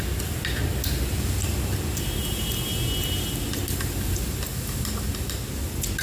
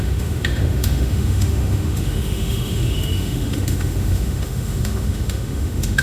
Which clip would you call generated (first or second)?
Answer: second